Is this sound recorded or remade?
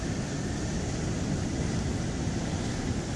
recorded